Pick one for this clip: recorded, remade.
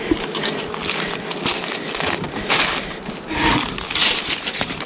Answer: recorded